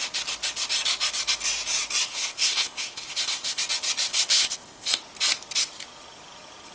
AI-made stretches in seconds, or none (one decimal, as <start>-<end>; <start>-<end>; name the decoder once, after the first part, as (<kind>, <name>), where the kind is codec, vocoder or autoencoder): 2.1-3.6 (codec, ZipCodec); 4.1-4.9